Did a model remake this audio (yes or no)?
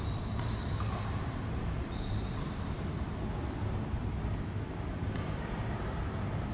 yes